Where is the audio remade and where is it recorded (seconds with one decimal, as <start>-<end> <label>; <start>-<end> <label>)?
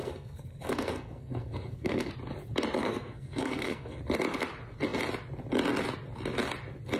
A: 0.0-2.1 remade; 2.1-2.8 recorded; 2.8-4.0 remade; 4.0-7.0 recorded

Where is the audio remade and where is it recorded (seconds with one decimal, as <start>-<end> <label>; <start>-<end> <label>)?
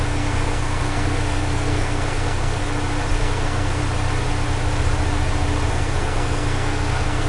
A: 0.0-2.6 remade; 2.6-3.1 recorded; 3.1-3.8 remade; 3.8-5.7 recorded; 5.7-7.3 remade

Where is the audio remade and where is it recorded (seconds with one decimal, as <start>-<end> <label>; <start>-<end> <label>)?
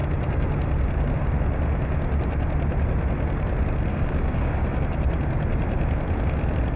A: 0.0-3.9 recorded; 3.9-4.8 remade; 4.8-6.8 recorded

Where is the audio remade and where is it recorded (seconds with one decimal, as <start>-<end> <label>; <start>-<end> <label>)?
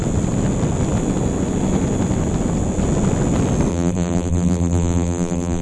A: 0.0-3.7 recorded; 3.7-5.6 remade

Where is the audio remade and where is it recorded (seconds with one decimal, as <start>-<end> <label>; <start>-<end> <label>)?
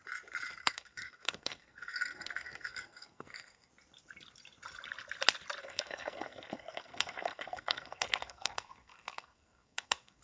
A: 0.0-0.6 recorded; 0.6-3.7 remade; 3.7-5.6 recorded; 5.6-10.2 remade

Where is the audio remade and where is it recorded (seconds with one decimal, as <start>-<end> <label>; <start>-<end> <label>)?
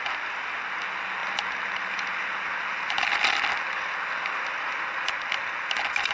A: 0.0-6.1 recorded